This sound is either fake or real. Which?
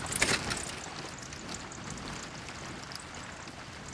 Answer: real